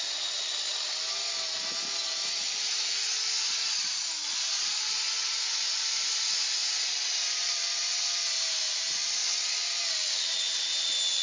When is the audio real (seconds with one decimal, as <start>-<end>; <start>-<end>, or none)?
0.0-5.2; 5.8-11.2